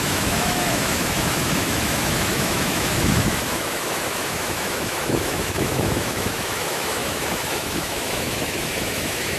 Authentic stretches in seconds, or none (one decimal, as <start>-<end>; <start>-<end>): none